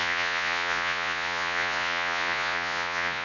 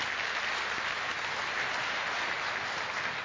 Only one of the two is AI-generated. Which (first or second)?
first